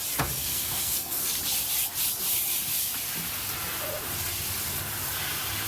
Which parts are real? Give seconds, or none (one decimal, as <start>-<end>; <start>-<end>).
0.0-0.4; 1.4-5.7